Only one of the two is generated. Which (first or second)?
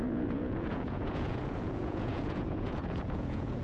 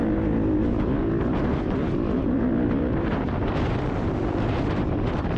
first